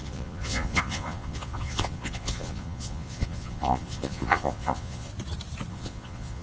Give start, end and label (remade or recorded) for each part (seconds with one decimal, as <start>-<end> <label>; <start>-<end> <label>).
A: 0.0-5.1 remade; 5.1-5.7 recorded; 5.7-6.4 remade